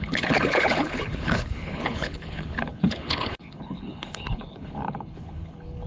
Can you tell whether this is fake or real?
fake